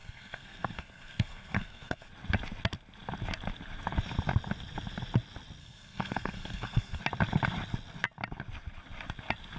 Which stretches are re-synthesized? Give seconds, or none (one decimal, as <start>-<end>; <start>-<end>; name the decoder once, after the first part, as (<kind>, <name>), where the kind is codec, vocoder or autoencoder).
0.0-2.1 (codec, SNAC); 5.6-7.0